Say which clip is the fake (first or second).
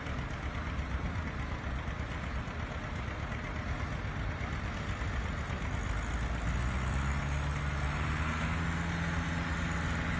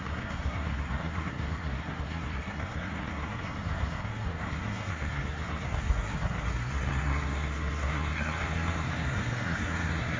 second